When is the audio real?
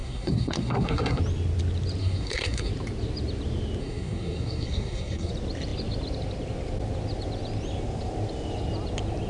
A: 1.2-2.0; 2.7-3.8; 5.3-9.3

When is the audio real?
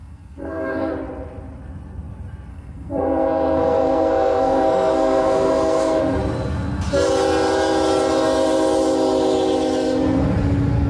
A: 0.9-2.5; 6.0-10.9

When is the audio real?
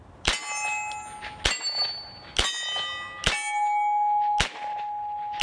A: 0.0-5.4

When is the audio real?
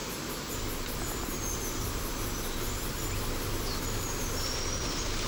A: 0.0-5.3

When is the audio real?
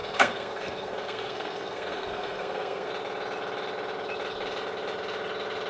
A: 2.9-5.7